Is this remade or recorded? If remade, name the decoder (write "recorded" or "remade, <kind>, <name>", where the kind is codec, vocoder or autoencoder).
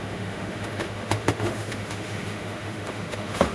remade, autoencoder, DAC-VAE